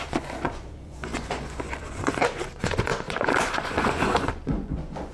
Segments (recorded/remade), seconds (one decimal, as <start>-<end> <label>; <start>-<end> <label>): 0.0-5.1 remade